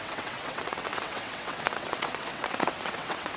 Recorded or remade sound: remade